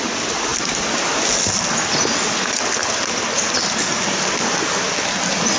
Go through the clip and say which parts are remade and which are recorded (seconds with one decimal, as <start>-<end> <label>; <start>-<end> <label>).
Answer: 0.0-5.6 recorded